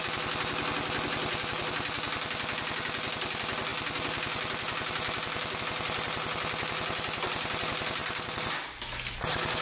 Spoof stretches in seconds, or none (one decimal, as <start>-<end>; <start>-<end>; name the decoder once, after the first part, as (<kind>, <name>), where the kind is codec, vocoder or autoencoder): none

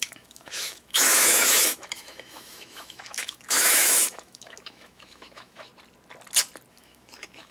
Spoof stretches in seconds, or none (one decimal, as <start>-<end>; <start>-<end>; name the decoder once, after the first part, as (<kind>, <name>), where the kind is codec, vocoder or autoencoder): 0.0-5.7 (autoencoder, DAC-VAE); 6.7-7.5

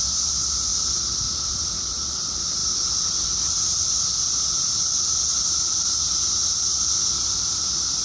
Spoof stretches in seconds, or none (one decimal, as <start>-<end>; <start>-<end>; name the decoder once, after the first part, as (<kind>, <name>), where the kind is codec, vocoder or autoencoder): 0.0-0.7 (vocoder, BigVGAN v2); 1.5-8.0

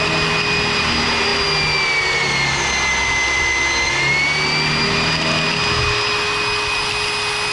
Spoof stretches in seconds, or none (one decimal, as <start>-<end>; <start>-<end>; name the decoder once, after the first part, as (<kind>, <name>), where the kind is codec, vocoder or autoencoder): none

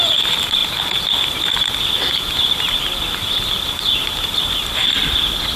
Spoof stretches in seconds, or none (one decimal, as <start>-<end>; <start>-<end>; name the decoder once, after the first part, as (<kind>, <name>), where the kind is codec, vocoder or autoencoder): none

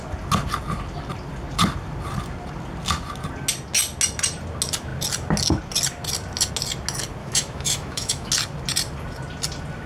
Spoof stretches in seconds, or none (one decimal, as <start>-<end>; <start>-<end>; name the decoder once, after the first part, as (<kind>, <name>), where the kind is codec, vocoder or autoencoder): 7.2-8.3 (autoencoder, DAC-VAE)

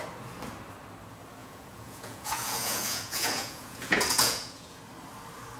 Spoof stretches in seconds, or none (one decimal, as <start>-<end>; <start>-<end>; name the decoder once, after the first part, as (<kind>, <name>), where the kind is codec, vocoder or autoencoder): 1.4-4.8 (vocoder, Vocos)